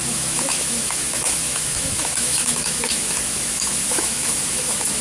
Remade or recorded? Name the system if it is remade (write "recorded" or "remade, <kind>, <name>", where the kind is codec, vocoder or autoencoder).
remade, autoencoder, DAC-VAE